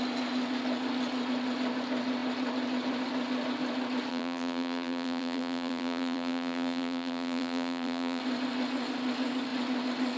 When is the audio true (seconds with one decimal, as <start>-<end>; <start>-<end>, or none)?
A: 0.0-4.1; 8.2-10.2